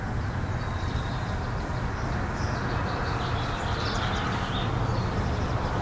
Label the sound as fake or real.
real